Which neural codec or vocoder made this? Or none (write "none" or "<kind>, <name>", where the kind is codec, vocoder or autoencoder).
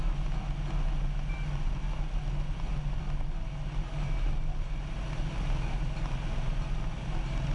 none